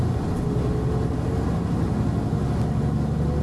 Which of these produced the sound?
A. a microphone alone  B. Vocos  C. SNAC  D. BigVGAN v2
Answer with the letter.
A